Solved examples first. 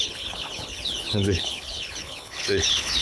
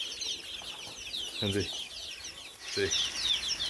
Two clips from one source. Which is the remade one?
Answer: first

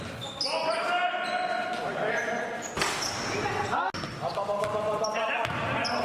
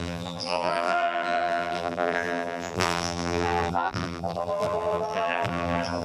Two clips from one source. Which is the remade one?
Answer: second